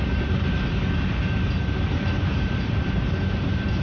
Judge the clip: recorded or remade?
remade